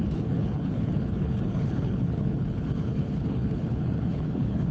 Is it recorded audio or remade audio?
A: remade